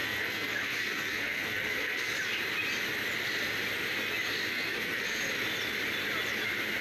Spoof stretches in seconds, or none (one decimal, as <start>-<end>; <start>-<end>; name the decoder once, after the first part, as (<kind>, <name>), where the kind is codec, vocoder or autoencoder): 0.0-2.1 (codec, SNAC); 4.5-5.2